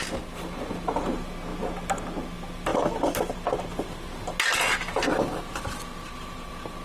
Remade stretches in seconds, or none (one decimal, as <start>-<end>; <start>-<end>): none